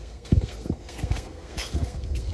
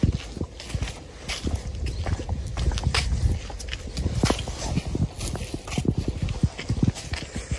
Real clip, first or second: second